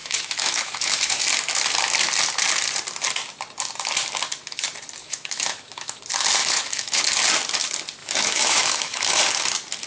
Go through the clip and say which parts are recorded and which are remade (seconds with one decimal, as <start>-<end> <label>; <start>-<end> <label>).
0.0-1.2 remade; 1.2-5.0 recorded; 5.0-6.0 remade; 6.0-6.4 recorded; 6.4-7.0 remade; 7.0-8.0 recorded; 8.0-9.2 remade; 9.2-9.9 recorded